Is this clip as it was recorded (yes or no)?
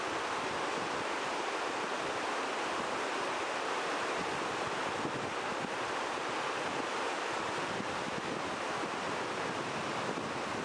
yes